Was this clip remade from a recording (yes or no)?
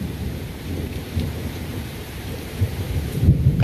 yes